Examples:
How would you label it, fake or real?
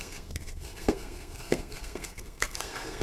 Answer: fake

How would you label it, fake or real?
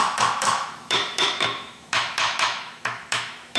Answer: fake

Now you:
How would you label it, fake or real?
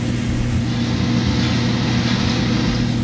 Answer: real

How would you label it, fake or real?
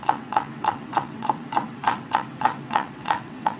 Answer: fake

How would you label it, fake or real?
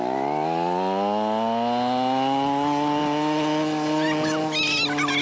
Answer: real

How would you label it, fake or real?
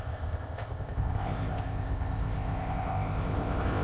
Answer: fake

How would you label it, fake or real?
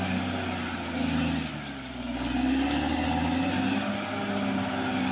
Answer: real